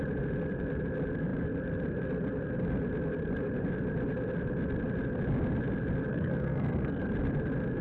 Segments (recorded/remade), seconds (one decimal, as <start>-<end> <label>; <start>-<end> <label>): 0.0-6.1 recorded; 6.1-7.1 remade; 7.1-7.8 recorded